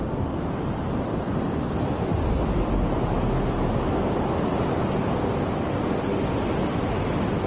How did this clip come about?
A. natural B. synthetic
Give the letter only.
A